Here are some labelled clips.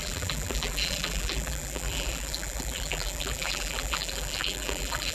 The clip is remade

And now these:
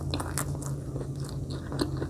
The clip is recorded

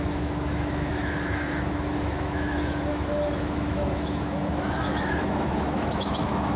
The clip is remade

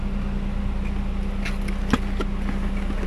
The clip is recorded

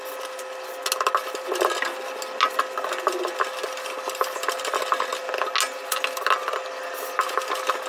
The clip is recorded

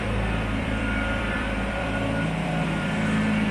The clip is remade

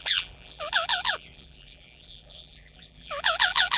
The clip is remade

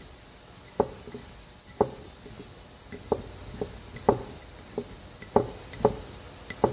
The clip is recorded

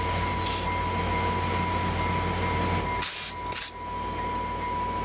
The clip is recorded